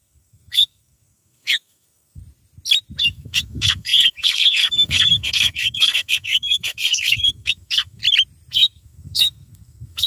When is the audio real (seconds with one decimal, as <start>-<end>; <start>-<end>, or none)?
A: 2.2-3.0; 8.0-8.5